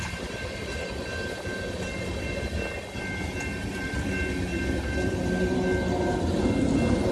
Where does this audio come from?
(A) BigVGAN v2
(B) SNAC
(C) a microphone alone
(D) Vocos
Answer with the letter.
C